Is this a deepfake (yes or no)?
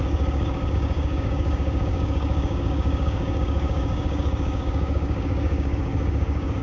yes